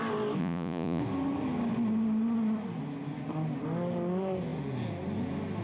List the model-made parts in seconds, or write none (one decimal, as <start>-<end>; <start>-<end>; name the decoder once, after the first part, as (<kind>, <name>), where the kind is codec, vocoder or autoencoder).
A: 0.4-1.0 (vocoder, Vocos)